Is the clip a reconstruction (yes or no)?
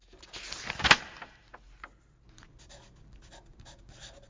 no